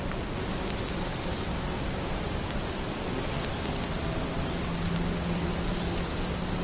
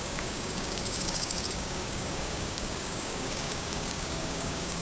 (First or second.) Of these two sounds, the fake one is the second